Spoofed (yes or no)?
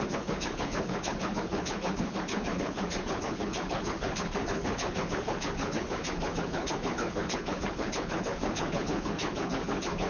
yes